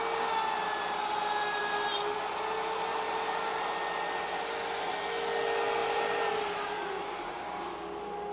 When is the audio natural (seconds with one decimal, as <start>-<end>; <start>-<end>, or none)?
0.0-2.9; 3.8-5.8; 7.3-8.3